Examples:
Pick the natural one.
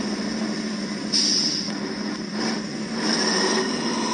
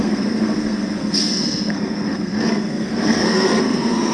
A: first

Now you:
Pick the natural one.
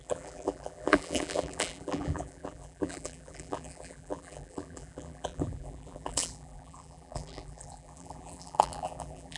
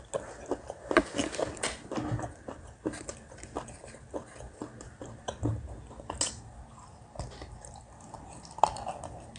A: second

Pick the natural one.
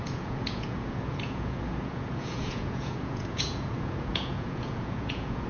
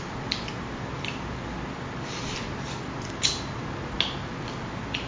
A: second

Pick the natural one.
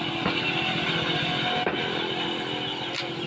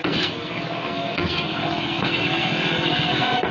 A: first